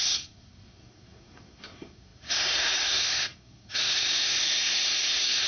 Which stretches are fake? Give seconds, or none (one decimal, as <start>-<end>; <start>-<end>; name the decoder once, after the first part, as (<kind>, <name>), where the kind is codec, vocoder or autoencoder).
0.0-5.5 (codec, SNAC)